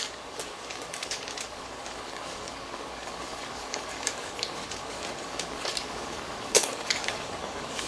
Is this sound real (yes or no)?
no